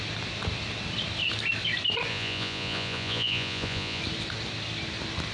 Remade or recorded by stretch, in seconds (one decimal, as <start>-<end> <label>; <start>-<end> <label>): 0.0-2.1 recorded; 2.1-4.0 remade; 4.0-5.3 recorded